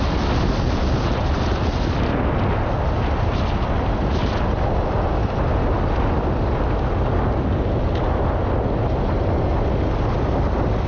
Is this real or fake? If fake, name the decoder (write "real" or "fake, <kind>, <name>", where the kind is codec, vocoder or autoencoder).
real